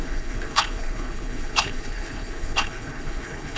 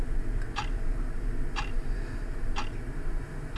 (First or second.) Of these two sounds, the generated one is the first